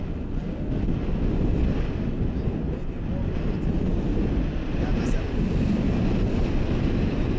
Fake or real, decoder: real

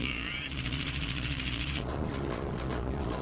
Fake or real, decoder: fake, vocoder, Vocos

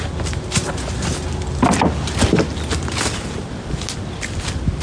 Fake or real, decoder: real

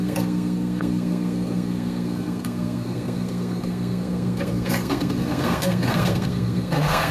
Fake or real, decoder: fake, codec, SNAC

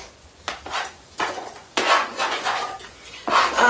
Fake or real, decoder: fake, vocoder, Vocos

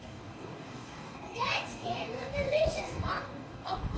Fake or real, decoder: fake, codec, DAC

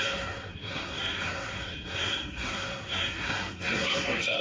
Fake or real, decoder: fake, codec, SNAC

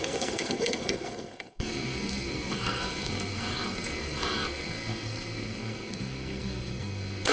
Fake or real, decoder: fake, codec, SNAC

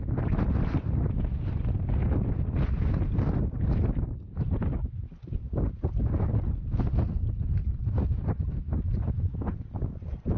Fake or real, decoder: real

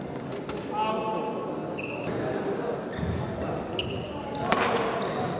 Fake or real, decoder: real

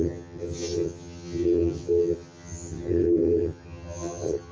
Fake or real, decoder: fake, vocoder, HiFi-GAN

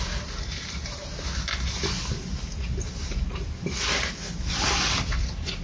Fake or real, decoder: real